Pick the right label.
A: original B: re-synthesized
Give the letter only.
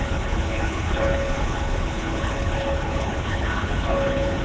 B